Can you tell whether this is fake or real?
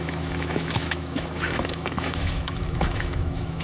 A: fake